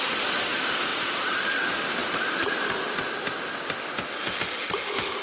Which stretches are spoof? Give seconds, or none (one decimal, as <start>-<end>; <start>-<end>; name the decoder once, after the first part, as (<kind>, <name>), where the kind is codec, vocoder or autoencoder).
0.9-1.5 (vocoder, BigVGAN v2); 2.0-2.5